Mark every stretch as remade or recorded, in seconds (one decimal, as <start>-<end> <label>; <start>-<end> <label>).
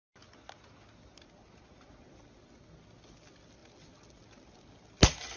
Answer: 0.0-5.4 recorded